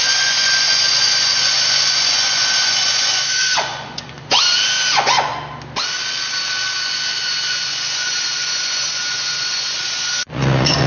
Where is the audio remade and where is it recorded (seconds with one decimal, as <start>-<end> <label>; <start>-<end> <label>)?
0.0-5.3 remade; 5.3-6.8 recorded; 6.8-10.9 remade